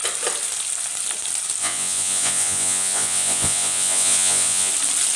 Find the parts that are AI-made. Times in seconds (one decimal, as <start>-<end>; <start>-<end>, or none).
1.6-4.7